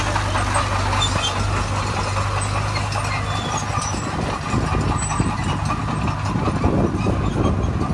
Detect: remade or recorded recorded